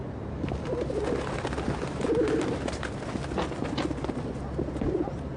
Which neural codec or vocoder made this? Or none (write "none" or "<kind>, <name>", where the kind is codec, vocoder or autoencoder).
vocoder, BigVGAN v2